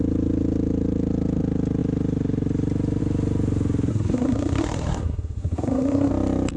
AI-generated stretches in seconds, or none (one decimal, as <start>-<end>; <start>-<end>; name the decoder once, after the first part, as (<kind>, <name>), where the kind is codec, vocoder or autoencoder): 3.9-6.1 (codec, SNAC)